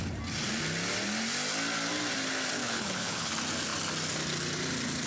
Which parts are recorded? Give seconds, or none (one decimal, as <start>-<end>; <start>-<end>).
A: 0.0-2.6; 3.3-5.1